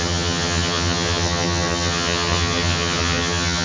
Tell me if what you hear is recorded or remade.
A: remade